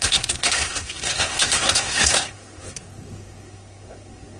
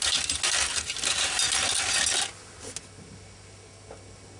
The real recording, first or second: second